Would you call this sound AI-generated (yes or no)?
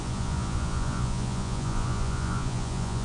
yes